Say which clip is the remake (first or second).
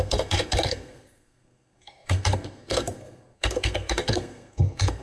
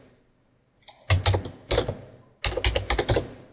first